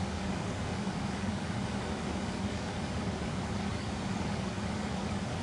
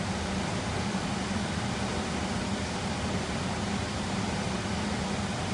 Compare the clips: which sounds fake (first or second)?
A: first